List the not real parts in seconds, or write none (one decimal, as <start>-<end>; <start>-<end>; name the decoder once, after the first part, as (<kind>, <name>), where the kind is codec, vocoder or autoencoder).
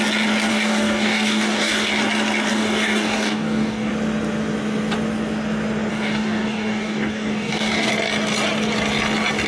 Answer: 0.5-1.9 (codec, DAC); 2.5-3.9; 5.9-7.9